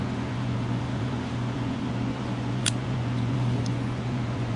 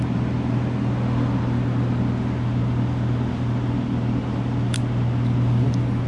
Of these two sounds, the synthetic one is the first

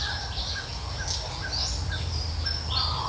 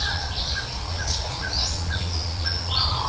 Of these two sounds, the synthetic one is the second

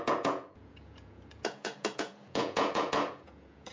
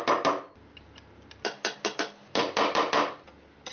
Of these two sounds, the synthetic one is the first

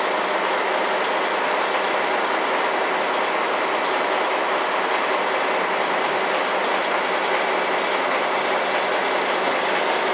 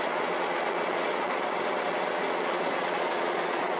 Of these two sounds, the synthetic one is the second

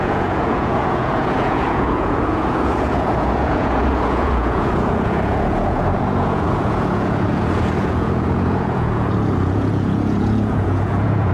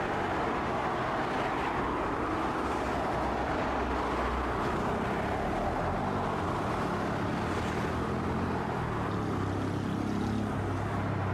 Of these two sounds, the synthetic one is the first